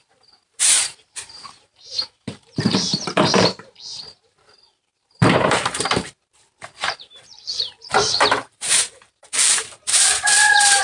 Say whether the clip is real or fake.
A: fake